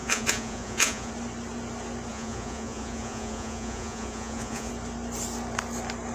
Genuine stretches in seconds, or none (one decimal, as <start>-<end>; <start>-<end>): 1.1-2.1; 4.7-6.1